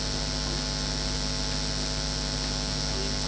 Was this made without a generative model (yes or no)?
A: yes